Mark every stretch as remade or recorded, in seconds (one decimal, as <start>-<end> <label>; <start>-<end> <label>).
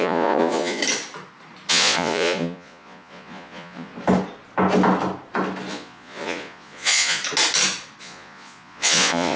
0.0-0.8 remade; 0.8-1.7 recorded; 1.7-3.9 remade; 3.9-5.7 recorded; 5.7-7.2 remade; 7.2-8.0 recorded; 8.0-9.4 remade